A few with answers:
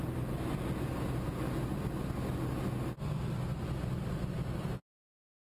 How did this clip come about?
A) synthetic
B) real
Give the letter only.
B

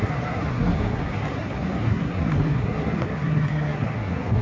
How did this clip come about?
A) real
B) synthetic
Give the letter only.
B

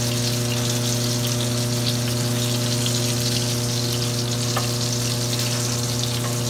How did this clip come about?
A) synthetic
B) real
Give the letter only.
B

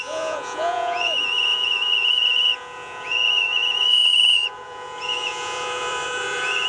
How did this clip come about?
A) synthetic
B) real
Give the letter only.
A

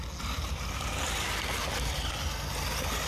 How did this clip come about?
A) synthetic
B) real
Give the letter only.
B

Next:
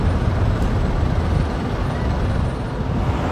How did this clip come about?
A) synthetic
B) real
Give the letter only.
B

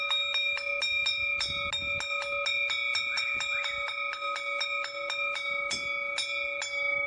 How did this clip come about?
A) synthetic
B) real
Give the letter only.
B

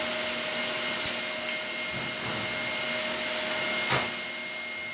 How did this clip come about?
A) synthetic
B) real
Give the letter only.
B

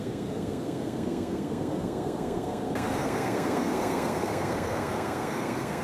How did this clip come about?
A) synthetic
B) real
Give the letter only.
A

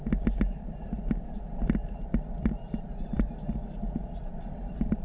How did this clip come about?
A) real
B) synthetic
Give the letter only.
A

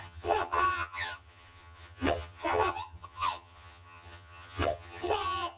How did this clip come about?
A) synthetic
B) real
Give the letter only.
A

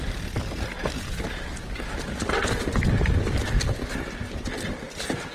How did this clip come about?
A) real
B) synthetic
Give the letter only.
B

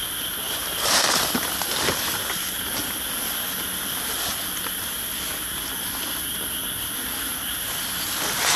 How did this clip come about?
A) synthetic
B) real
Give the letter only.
B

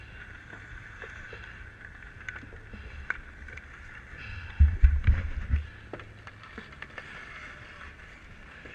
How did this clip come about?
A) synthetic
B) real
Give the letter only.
B